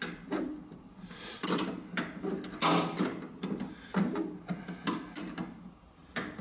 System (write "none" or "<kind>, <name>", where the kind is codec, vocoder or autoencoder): none